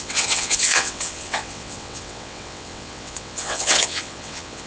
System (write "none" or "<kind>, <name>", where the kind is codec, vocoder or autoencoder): vocoder, WaveNeXt